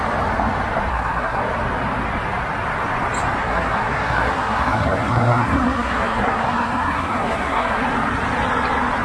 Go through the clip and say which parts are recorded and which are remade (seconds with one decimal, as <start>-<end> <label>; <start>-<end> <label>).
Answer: 0.0-0.9 recorded; 0.9-1.4 remade; 1.4-3.4 recorded; 3.4-7.8 remade; 7.8-9.0 recorded